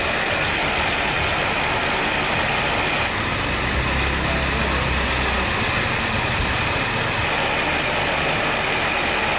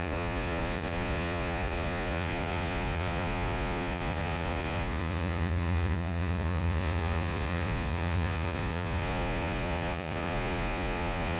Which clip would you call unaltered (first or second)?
first